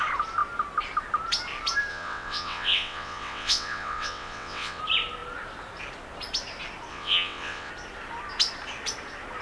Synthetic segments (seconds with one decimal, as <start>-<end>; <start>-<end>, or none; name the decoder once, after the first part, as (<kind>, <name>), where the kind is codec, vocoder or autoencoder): 1.9-4.8 (vocoder, WaveNeXt); 6.9-7.7